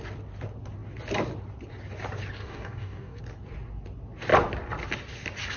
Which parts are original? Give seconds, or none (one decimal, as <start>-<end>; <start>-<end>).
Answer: 0.0-2.4; 3.2-5.6